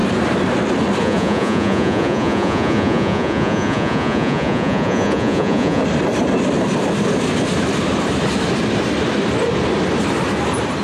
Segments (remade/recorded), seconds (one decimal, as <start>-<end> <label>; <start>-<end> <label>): 0.0-1.0 recorded; 1.0-5.8 remade; 5.8-10.8 recorded